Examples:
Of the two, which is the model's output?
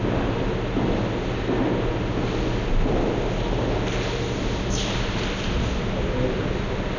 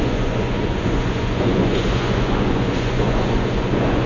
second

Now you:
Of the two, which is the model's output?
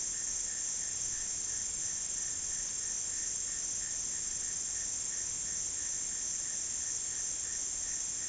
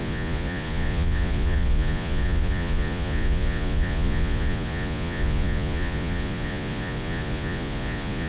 second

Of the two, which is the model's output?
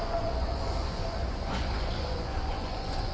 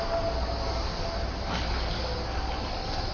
first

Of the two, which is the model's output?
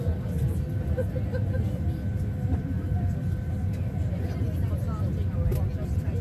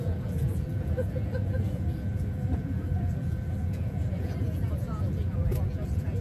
second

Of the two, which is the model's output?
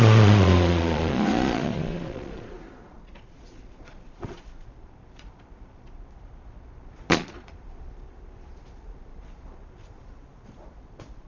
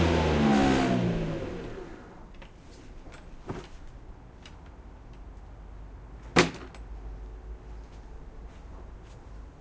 first